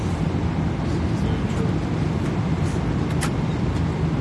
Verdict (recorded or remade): recorded